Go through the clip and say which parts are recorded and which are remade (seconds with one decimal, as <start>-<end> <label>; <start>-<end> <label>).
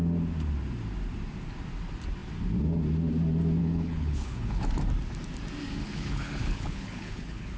0.0-3.6 recorded; 3.6-4.6 remade; 4.6-5.8 recorded; 5.8-7.6 remade